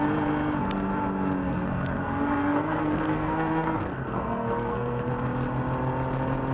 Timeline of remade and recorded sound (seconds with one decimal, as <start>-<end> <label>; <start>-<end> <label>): 0.0-1.4 recorded; 1.4-5.1 remade; 5.1-6.5 recorded